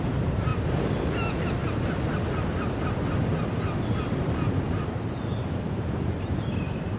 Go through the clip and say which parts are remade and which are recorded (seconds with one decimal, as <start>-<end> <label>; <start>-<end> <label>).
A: 0.0-0.5 remade; 0.5-4.7 recorded; 4.7-7.0 remade